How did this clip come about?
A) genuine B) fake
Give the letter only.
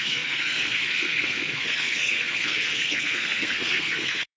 B